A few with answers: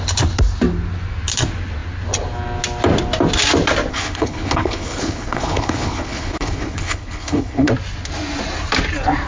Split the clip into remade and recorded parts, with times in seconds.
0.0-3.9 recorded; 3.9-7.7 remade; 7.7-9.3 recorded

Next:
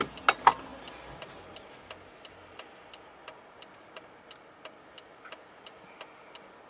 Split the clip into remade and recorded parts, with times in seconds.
0.0-6.7 recorded